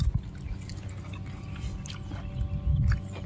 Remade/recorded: recorded